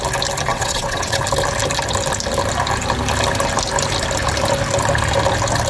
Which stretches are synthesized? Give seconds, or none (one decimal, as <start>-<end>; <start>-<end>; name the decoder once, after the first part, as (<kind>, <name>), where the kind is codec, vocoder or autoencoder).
0.5-1.2 (vocoder, WaveNeXt)